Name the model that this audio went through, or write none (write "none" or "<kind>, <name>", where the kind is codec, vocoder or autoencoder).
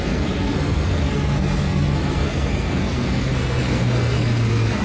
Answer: codec, SNAC